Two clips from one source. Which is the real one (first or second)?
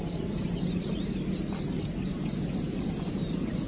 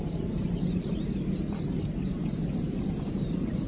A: first